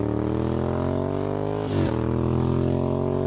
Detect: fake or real real